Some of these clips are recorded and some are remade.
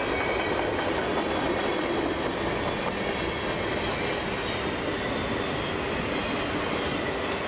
recorded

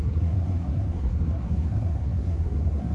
remade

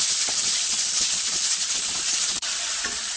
remade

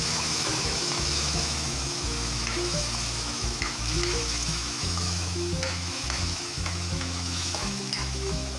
remade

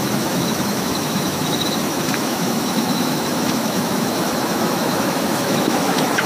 remade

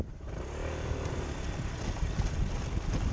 recorded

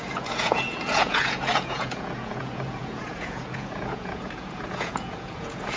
remade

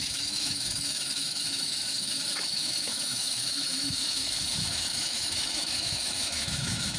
remade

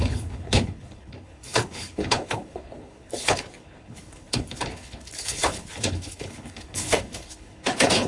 remade